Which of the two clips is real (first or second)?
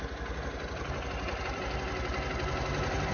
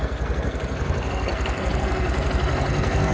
first